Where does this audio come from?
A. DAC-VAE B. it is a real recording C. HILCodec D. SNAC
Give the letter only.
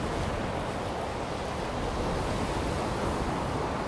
B